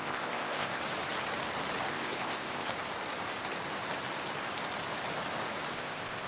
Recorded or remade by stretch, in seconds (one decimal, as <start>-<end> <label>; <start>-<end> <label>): 0.0-0.8 remade; 0.8-1.9 recorded; 1.9-2.7 remade; 2.7-5.7 recorded; 5.7-6.3 remade